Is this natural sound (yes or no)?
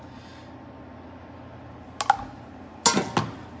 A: yes